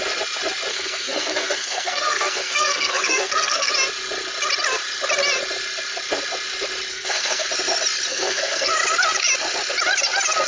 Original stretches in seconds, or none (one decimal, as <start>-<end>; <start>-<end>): 0.0-0.7; 3.7-6.9; 7.5-8.1; 8.7-10.5